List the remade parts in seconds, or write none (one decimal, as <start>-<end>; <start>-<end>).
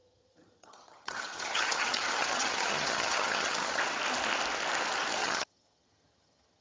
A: 0.0-3.8; 5.2-6.6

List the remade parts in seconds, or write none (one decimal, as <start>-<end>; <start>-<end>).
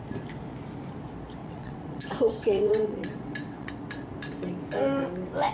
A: 1.4-3.7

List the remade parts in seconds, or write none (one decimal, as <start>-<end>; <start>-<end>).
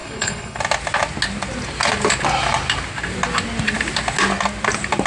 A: 0.0-0.6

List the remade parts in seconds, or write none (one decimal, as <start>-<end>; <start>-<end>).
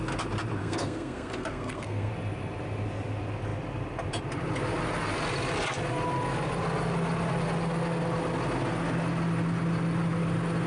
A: 0.6-2.1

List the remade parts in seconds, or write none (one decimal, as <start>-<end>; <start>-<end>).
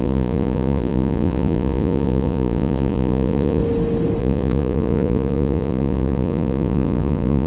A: 0.0-3.6; 4.2-7.5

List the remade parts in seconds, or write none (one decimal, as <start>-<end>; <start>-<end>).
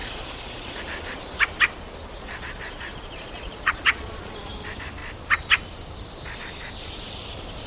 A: 0.0-0.8; 2.1-4.5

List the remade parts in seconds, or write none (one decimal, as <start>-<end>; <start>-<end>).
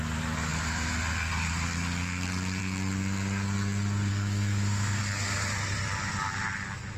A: 4.1-5.0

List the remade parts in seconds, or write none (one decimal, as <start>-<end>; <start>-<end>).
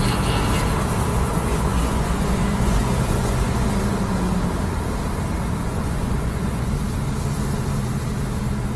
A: 1.1-3.7; 5.6-6.7